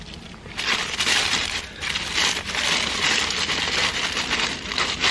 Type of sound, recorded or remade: recorded